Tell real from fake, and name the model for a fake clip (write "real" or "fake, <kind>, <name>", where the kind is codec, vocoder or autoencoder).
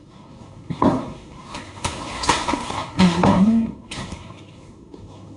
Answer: fake, codec, SNAC